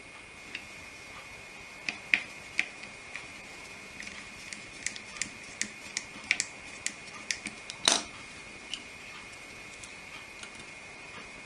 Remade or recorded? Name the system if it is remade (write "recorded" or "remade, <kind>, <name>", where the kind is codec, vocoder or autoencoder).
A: recorded